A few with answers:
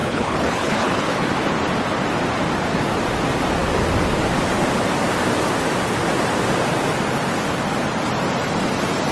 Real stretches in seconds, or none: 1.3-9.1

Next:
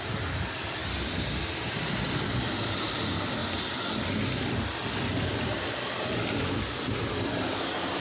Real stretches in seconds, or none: 0.0-8.0

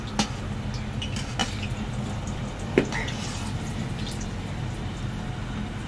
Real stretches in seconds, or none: 0.0-1.4; 4.9-5.9

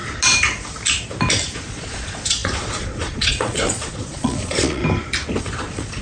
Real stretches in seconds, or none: 0.0-1.7; 4.8-5.4

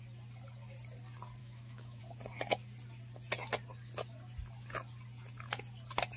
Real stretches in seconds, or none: 0.0-1.4; 2.0-6.2

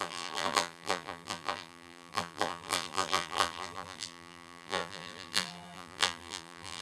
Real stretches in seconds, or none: none